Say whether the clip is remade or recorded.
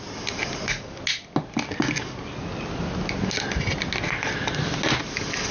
recorded